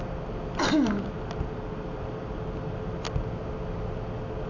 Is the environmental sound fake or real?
real